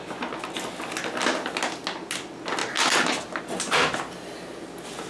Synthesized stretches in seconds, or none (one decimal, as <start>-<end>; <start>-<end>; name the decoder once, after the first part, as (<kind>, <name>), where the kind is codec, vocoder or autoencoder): none